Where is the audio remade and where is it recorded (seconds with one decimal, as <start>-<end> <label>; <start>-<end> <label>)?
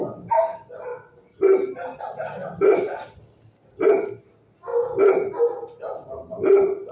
0.0-6.9 recorded